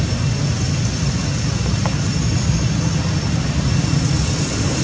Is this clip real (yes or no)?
yes